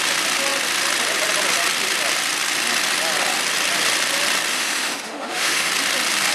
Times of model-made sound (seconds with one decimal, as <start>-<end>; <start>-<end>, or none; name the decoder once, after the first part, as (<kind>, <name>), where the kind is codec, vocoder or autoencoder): 4.5-5.7 (autoencoder, DAC-VAE)